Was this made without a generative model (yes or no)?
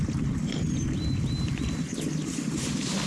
yes